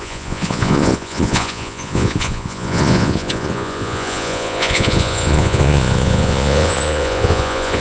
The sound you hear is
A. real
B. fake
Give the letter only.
B